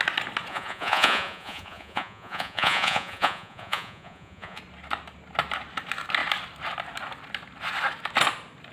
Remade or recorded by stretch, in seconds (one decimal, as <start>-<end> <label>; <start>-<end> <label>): 0.0-0.5 recorded; 0.5-4.6 remade; 4.6-8.7 recorded